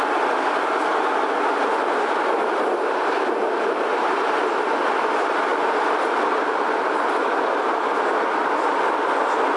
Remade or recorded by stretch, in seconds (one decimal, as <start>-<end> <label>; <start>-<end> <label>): 0.0-9.6 recorded